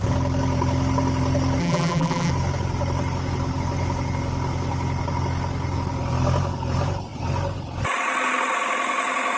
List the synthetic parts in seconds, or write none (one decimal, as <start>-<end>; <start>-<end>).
1.6-2.3